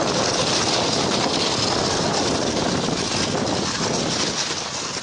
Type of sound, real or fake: real